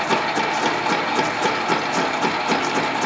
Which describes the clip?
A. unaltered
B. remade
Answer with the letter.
A